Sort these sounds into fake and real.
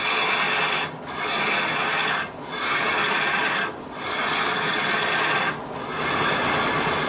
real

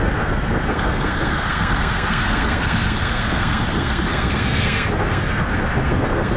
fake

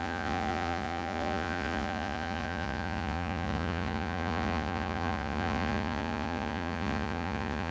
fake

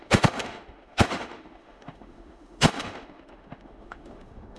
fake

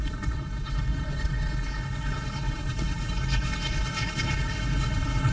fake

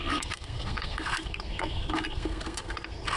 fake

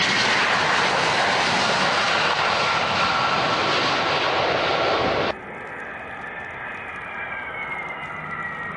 real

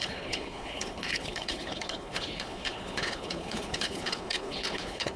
fake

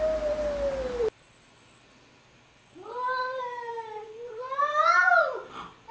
real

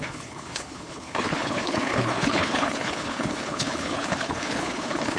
fake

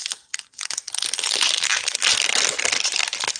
real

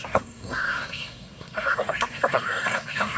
fake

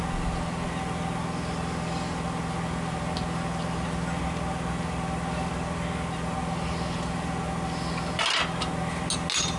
real